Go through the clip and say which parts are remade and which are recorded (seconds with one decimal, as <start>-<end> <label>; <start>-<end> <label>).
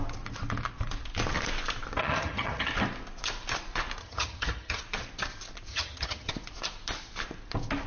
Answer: 0.0-2.0 recorded; 2.0-2.7 remade; 2.7-4.0 recorded; 4.0-4.8 remade; 4.8-5.7 recorded; 5.7-6.3 remade; 6.3-7.9 recorded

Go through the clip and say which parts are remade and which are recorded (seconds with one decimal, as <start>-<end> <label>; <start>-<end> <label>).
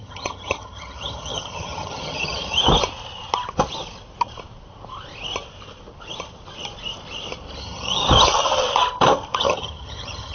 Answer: 0.0-2.6 remade; 2.6-7.6 recorded; 7.6-8.0 remade; 8.0-9.4 recorded; 9.4-10.3 remade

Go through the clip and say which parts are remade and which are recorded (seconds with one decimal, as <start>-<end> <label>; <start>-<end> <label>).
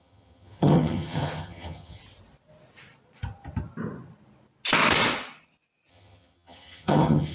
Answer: 0.0-2.0 remade; 2.0-5.9 recorded; 5.9-7.3 remade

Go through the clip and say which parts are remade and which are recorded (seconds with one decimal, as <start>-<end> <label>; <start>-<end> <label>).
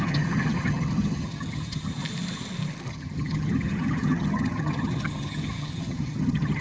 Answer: 0.0-2.0 remade; 2.0-2.9 recorded; 2.9-6.6 remade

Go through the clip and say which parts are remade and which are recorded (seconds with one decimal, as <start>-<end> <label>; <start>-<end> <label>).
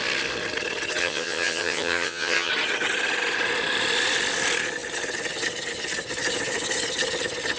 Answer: 0.0-1.0 recorded; 1.0-2.5 remade; 2.5-7.6 recorded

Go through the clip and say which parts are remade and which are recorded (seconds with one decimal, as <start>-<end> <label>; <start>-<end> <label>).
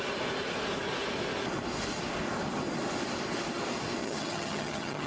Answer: 0.0-4.0 recorded; 4.0-5.1 remade